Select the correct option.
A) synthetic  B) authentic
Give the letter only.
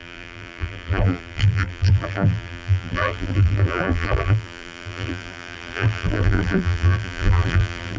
A